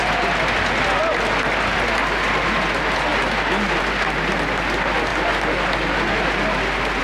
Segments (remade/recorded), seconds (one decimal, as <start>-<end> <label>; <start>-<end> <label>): 0.0-7.0 recorded